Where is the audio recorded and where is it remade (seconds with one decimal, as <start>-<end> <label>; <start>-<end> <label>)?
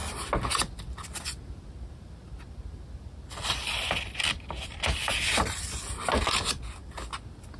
0.0-7.6 recorded